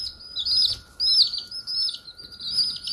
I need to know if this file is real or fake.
real